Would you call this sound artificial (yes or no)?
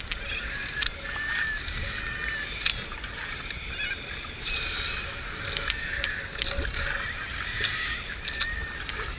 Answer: no